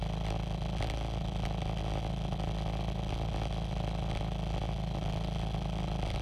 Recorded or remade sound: recorded